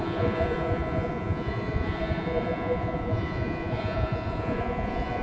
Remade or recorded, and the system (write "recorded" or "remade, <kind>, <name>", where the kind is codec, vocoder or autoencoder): remade, vocoder, Vocos